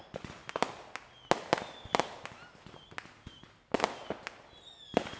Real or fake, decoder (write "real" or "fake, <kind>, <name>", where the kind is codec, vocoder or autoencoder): real